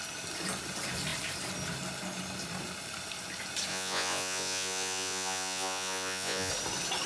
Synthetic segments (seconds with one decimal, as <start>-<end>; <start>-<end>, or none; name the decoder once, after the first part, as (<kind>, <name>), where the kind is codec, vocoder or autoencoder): 3.7-6.5 (vocoder, Vocos)